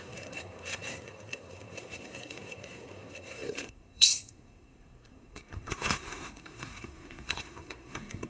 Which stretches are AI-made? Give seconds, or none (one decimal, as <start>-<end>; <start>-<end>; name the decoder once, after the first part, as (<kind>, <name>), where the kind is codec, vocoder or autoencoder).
0.0-8.3 (codec, SNAC)